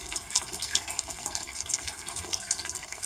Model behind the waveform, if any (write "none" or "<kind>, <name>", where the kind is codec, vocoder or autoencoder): codec, SNAC